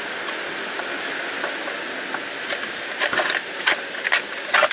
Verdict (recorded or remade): recorded